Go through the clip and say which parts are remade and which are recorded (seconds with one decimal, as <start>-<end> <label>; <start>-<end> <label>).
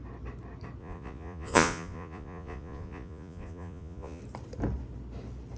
0.0-0.8 recorded; 0.8-4.2 remade; 4.2-5.6 recorded